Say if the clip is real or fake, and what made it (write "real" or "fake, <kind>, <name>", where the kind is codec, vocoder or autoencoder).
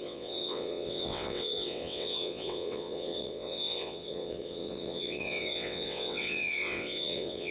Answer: fake, vocoder, WaveNeXt